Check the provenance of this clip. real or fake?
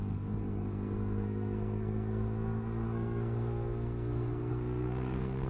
fake